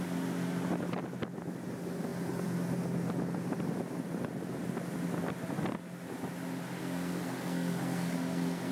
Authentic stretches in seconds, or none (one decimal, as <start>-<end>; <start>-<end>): 0.0-6.8